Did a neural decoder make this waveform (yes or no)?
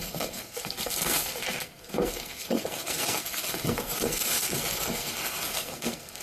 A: yes